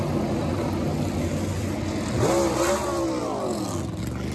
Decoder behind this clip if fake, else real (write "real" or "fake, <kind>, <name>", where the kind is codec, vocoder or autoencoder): real